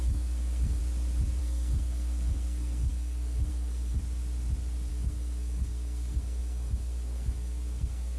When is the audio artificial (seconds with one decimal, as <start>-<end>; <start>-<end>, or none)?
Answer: 0.0-0.8; 1.4-4.0; 4.9-8.2